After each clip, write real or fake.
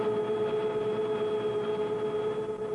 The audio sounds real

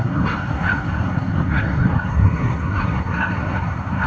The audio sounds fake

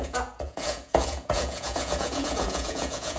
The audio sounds fake